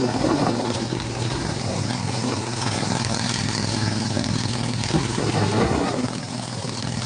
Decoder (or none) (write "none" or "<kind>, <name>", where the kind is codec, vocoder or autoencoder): codec, SNAC